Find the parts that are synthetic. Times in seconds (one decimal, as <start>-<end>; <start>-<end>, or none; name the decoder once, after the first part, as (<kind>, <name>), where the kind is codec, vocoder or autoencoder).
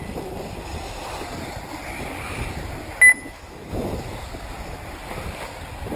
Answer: 3.1-3.7 (autoencoder, DAC-VAE)